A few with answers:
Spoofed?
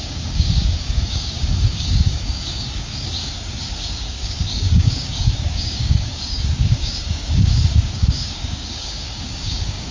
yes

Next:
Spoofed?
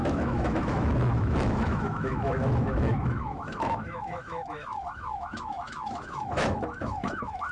yes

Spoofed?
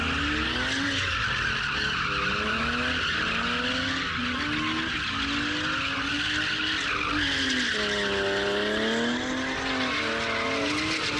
no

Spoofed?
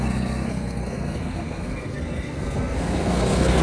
yes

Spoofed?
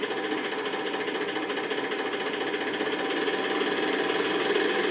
no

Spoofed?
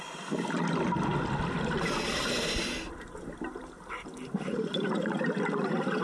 no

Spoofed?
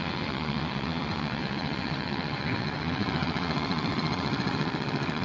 yes